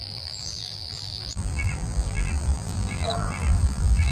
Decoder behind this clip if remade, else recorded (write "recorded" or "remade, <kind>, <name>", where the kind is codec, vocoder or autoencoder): remade, vocoder, BigVGAN v2